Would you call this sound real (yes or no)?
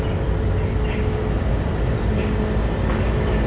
yes